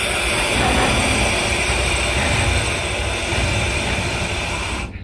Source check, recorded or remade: remade